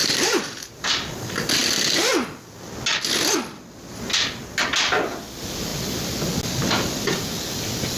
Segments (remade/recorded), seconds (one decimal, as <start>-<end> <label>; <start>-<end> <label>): 0.0-0.9 remade; 0.9-8.0 recorded